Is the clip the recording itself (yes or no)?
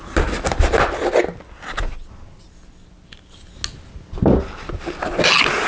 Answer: yes